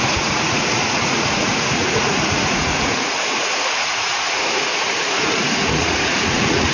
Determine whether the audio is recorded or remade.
remade